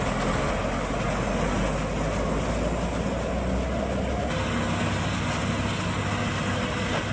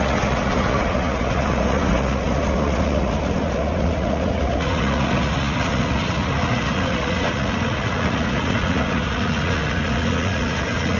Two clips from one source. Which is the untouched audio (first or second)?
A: first